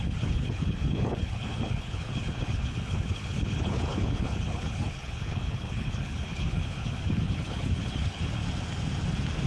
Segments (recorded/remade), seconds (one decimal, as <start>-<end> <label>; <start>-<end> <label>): 0.0-8.4 remade; 8.4-9.5 recorded